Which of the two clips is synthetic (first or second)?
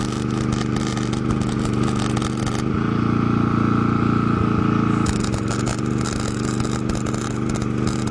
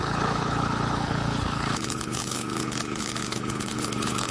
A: second